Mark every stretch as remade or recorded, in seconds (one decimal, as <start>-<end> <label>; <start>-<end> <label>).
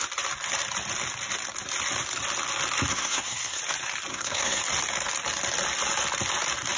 0.0-2.9 recorded; 2.9-3.6 remade; 3.6-4.1 recorded; 4.1-4.6 remade; 4.6-6.8 recorded